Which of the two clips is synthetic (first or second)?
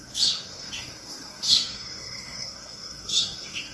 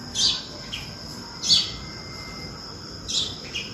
first